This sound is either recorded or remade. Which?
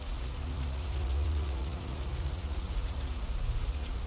remade